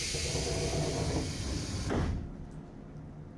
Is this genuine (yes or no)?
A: yes